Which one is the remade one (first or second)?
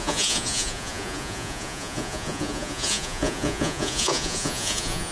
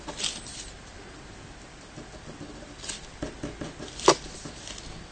first